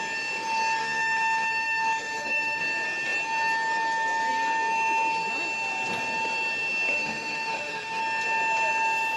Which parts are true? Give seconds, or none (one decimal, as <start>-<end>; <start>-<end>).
0.0-0.8; 2.6-6.9; 8.0-9.2